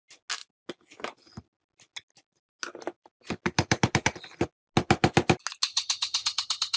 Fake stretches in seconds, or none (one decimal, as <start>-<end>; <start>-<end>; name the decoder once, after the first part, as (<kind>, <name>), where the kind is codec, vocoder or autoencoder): 5.7-6.8 (vocoder, HiFi-GAN)